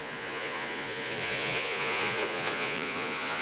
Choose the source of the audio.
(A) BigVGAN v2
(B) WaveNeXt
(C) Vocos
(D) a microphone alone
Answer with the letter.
C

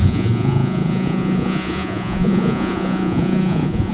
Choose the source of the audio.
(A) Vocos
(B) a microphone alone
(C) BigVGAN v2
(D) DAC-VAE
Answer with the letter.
A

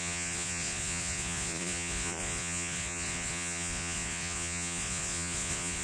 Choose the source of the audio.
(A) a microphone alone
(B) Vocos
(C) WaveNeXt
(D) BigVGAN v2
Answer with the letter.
B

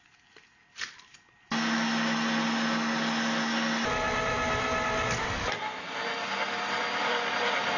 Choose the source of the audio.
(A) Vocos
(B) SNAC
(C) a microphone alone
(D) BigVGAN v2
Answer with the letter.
C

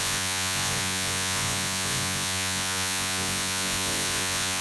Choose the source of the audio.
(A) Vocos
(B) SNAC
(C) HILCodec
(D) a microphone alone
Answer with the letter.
A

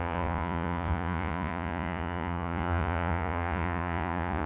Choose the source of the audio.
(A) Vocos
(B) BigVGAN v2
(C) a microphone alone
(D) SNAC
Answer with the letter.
A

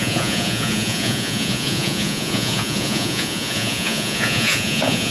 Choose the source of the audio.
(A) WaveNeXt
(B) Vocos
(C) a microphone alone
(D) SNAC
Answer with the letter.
B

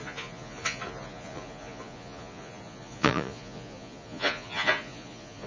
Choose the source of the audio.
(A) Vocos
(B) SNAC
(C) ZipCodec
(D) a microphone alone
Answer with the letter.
A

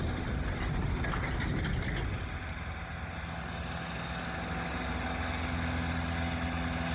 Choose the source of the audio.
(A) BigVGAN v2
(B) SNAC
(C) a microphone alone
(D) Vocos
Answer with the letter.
C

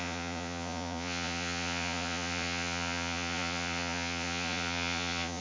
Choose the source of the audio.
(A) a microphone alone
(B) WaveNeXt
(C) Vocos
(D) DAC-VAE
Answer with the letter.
C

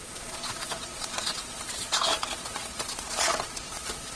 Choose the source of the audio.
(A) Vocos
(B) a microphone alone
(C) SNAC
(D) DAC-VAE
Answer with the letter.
A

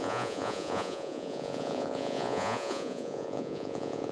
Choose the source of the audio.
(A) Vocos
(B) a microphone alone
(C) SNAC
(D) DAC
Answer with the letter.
A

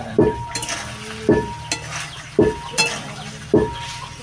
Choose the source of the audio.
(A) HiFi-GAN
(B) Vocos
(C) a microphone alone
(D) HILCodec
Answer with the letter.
C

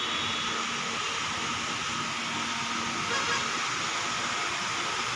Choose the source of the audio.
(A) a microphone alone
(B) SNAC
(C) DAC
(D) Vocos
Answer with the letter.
A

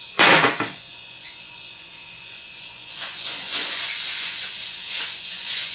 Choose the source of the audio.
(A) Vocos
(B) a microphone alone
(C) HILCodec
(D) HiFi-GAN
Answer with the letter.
A